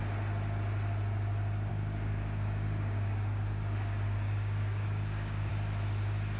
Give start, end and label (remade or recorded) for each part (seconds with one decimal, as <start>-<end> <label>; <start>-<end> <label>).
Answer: 0.0-1.7 recorded; 1.7-5.5 remade; 5.5-6.4 recorded